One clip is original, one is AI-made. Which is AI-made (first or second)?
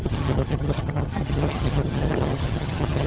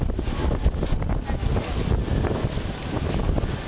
first